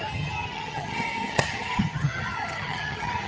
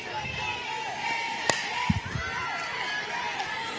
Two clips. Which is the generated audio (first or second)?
first